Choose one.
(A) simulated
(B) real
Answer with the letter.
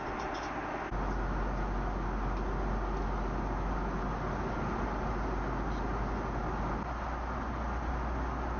B